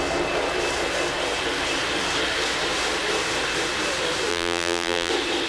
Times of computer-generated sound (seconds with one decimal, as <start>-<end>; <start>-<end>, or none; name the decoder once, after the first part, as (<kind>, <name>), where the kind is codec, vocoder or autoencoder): 4.3-5.1 (vocoder, BigVGAN v2)